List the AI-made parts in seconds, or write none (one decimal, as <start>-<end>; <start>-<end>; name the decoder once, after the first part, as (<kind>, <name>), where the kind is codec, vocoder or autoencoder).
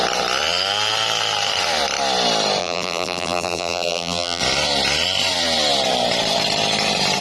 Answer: 2.6-4.4 (vocoder, BigVGAN v2)